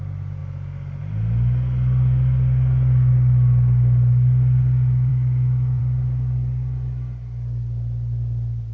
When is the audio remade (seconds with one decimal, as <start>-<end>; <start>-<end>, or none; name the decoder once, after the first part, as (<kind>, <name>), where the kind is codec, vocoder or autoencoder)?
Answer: 5.1-5.8 (autoencoder, DAC-VAE)